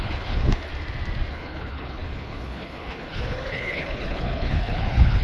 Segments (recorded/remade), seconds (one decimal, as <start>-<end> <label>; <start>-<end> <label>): 0.0-0.7 remade; 0.7-1.3 recorded; 1.3-5.2 remade